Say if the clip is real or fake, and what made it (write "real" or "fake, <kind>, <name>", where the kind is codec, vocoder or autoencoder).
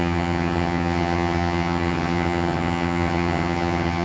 fake, vocoder, HiFi-GAN